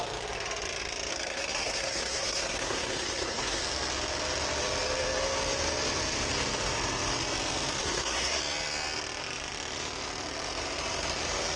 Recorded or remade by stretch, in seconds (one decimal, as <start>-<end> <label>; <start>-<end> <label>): 0.0-1.1 recorded; 1.1-3.6 remade; 3.6-7.8 recorded; 7.8-8.4 remade; 8.4-11.6 recorded